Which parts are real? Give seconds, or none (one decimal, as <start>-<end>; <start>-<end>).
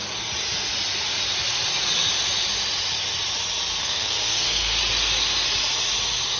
0.0-3.8; 4.8-6.4